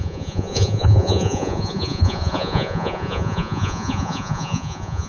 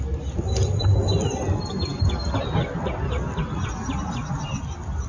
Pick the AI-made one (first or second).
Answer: first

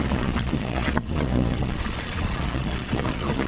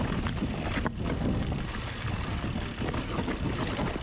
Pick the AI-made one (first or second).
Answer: first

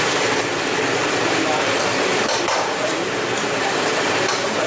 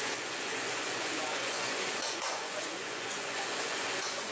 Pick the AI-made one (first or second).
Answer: second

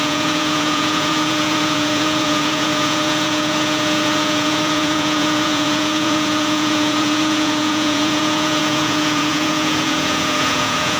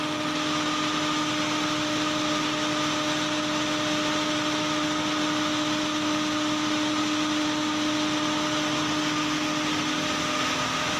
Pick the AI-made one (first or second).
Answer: first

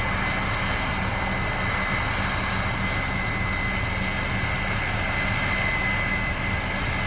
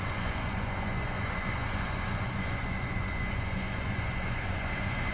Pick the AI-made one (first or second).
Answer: second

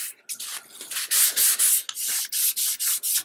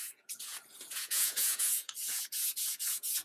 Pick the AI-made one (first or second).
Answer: second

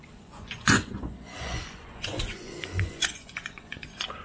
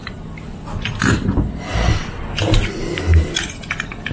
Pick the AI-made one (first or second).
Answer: first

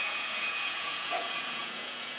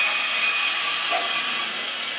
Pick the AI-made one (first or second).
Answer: first